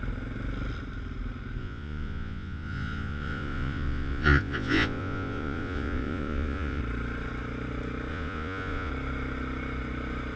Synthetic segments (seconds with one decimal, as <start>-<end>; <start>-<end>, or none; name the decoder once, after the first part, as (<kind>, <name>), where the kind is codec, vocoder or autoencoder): 1.6-6.8 (vocoder, Vocos); 8.1-8.9